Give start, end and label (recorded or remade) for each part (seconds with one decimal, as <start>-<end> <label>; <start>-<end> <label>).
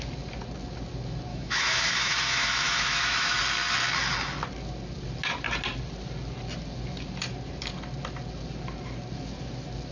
0.0-1.3 recorded; 1.3-3.4 remade; 3.4-9.9 recorded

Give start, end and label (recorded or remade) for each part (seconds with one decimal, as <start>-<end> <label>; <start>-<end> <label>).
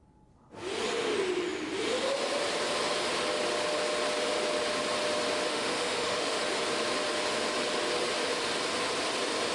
0.0-5.5 recorded; 5.5-6.4 remade; 6.4-9.5 recorded